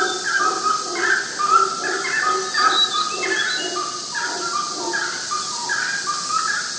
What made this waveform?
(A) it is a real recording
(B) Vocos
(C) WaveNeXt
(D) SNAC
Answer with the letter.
A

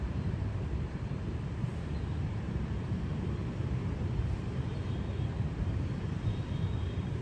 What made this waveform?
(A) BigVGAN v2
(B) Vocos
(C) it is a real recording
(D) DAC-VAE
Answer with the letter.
A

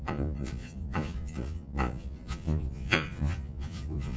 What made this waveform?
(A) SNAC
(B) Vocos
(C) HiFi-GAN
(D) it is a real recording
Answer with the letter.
B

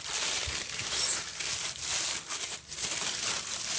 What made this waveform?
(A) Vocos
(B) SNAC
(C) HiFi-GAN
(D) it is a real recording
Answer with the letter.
D